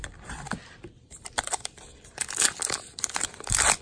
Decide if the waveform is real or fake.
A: fake